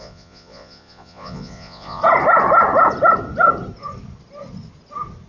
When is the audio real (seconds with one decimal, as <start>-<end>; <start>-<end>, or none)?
2.0-5.3